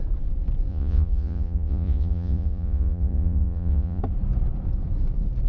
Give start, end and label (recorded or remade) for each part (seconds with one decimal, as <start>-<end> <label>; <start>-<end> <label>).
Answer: 0.0-0.7 recorded; 0.7-4.0 remade; 4.0-5.5 recorded